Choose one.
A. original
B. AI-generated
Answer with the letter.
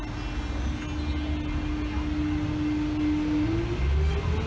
A